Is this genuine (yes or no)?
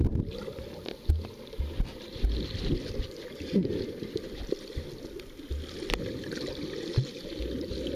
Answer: yes